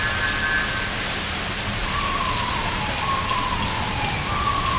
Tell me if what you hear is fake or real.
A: real